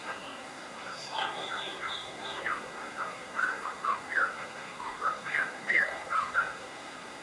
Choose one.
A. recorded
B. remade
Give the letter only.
B